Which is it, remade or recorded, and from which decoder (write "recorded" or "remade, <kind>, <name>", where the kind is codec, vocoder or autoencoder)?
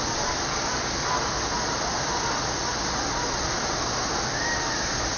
recorded